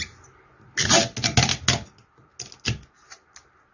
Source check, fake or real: real